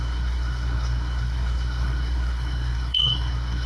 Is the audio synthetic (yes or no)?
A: yes